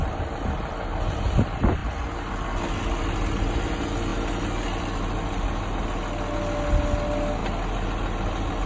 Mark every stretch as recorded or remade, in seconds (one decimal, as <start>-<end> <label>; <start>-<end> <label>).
0.0-8.7 recorded